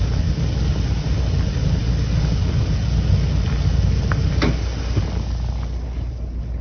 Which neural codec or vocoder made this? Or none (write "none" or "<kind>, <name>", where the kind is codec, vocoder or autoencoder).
none